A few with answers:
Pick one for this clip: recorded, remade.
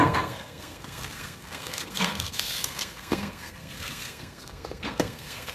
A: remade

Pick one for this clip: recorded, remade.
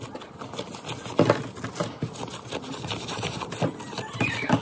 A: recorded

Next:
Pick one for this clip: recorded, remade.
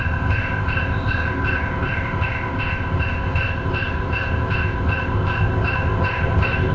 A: remade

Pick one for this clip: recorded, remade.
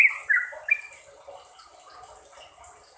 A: recorded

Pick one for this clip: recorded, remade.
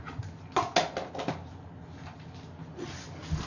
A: recorded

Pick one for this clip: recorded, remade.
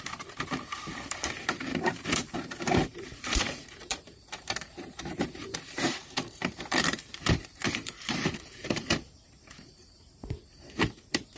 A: remade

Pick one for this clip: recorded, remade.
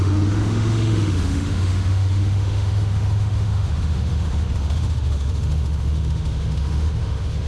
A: remade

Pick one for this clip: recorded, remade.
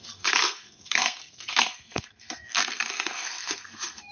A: remade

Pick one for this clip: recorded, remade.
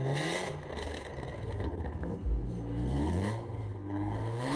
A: remade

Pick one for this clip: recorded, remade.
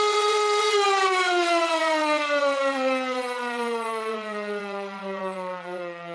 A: remade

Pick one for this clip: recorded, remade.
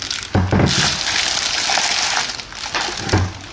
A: recorded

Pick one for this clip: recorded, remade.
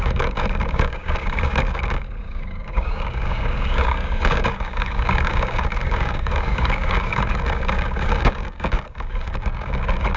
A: remade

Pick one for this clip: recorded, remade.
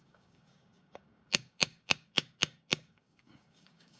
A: remade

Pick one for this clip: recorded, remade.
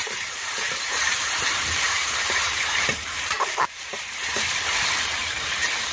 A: remade